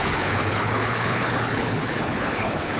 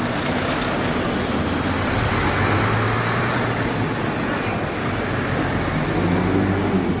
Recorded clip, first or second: second